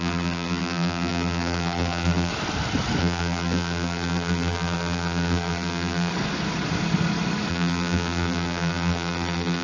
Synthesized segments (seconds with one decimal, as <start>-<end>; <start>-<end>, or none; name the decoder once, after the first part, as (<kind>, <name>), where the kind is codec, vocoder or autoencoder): 0.0-2.3 (vocoder, BigVGAN v2); 3.0-6.1; 7.5-9.6